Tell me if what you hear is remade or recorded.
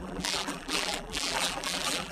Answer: remade